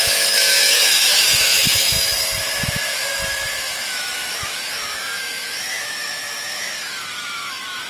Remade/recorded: remade